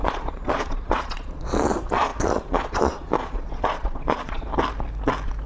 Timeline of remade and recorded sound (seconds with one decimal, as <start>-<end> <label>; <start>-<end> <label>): 0.0-4.5 remade; 4.5-5.5 recorded